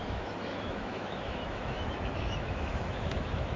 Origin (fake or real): fake